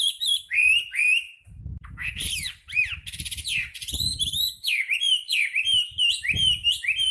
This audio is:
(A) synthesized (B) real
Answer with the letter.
A